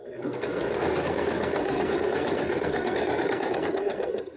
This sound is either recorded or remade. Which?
remade